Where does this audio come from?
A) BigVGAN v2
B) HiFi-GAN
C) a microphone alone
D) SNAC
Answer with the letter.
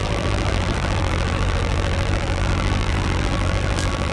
A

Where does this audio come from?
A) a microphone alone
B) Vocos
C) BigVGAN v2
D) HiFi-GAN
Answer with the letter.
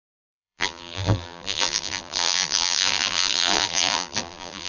C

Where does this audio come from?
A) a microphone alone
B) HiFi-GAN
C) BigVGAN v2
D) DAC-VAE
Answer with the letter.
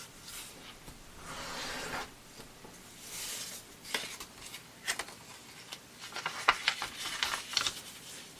A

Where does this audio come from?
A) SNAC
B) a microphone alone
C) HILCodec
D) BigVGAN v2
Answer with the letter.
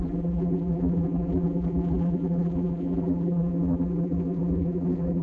D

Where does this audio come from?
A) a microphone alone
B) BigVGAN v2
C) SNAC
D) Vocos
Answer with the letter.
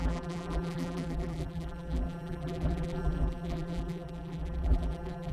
B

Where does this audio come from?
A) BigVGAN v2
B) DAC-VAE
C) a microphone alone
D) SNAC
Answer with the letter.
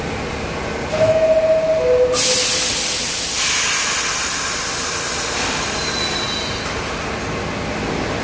C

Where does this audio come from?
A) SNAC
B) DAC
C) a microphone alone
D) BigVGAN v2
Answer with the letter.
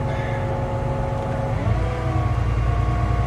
C